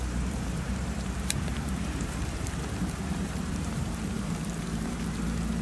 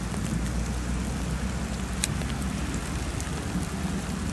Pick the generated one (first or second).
first